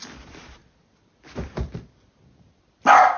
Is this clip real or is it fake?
real